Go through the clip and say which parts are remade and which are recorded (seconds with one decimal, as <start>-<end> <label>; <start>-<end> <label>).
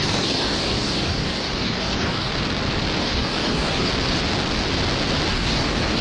0.0-2.3 remade; 2.3-3.0 recorded; 3.0-3.9 remade; 3.9-5.3 recorded; 5.3-6.0 remade